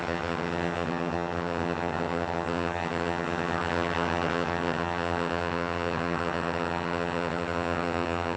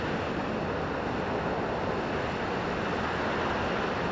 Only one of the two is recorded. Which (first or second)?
second